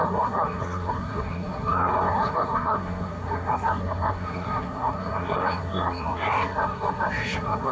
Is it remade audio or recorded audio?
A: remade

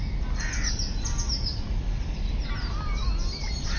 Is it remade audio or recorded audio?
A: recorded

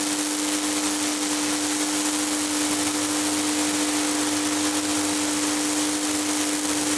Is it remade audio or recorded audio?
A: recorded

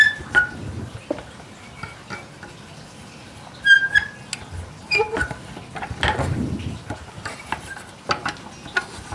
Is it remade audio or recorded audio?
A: recorded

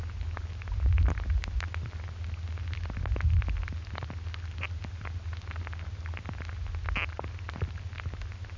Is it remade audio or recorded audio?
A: recorded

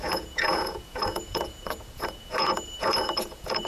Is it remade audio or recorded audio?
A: remade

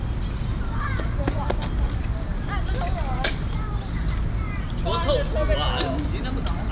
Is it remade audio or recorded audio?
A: recorded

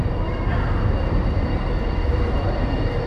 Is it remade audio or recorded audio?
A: remade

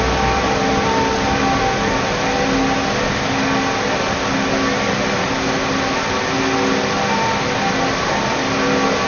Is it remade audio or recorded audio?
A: recorded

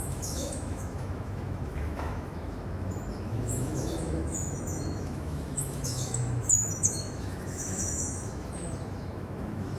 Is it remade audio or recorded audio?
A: remade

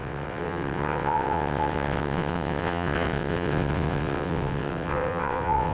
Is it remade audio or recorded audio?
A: remade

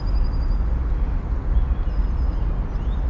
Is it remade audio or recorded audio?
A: recorded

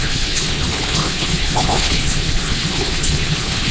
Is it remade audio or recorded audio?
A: remade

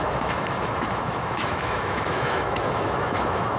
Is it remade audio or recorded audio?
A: remade